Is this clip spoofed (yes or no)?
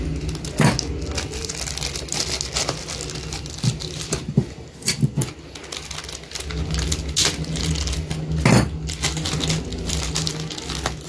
no